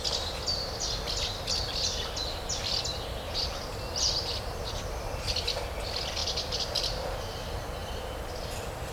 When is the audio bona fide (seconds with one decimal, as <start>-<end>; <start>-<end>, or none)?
0.0-6.2; 7.2-7.8; 8.3-8.9